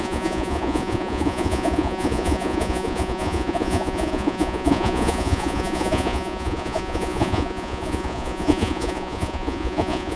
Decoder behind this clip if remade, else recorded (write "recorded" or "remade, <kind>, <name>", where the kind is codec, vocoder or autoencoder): remade, vocoder, Vocos